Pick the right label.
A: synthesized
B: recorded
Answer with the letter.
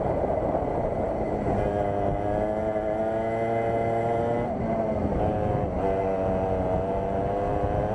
B